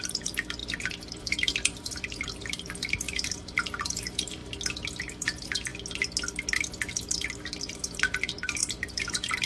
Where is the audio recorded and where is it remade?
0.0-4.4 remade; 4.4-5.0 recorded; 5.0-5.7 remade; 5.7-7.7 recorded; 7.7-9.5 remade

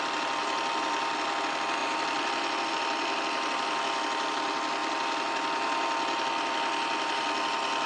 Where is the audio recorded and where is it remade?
0.0-7.9 recorded

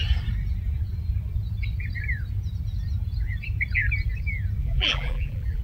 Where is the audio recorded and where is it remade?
0.0-4.6 recorded; 4.6-5.6 remade

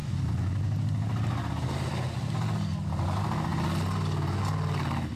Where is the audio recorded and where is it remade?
0.0-5.2 recorded

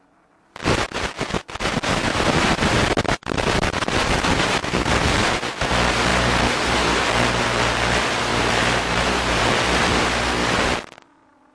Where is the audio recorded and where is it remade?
0.0-6.1 recorded; 6.1-7.0 remade; 7.0-8.3 recorded; 8.3-9.4 remade; 9.4-11.5 recorded

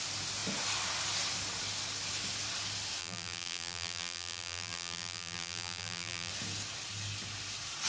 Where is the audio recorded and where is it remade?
0.0-3.0 recorded; 3.0-6.3 remade; 6.3-7.9 recorded